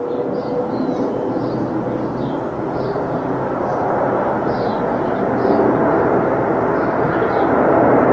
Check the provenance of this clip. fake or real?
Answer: real